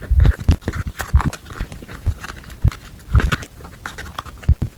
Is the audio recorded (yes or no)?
yes